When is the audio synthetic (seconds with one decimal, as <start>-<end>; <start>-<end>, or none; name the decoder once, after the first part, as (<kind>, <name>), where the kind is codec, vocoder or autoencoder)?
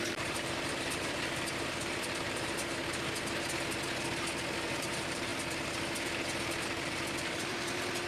0.0-2.8 (vocoder, BigVGAN v2); 4.8-5.3; 7.3-8.1